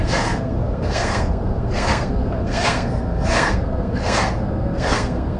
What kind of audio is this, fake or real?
fake